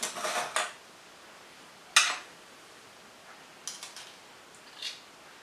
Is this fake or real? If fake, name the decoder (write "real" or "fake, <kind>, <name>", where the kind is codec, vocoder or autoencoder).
real